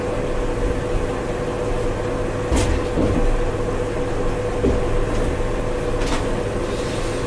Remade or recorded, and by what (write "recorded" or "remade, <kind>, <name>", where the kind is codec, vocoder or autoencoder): recorded